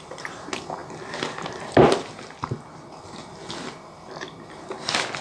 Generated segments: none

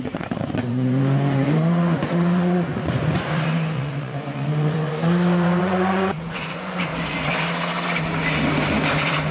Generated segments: 0.0-4.8 (vocoder, Vocos); 5.6-6.9

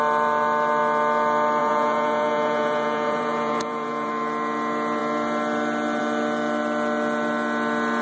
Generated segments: 1.6-4.1 (vocoder, Vocos)